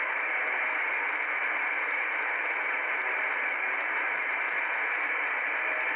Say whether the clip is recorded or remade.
recorded